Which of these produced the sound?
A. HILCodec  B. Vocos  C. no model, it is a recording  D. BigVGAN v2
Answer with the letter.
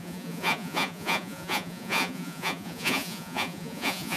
B